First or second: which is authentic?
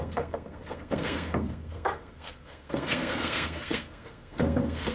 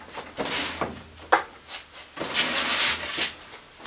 second